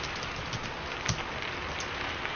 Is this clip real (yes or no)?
yes